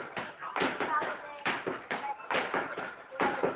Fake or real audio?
fake